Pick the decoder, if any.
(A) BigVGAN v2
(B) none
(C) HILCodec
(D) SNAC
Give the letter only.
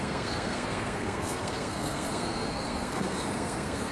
D